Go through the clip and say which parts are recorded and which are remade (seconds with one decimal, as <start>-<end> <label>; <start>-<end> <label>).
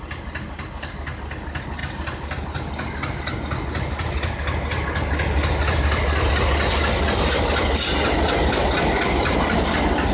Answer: 0.0-10.1 recorded